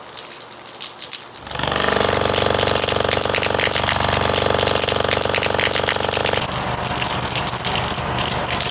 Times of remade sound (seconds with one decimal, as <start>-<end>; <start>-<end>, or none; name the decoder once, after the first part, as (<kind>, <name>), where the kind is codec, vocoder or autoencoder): none